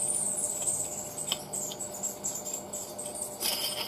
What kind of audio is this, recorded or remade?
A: recorded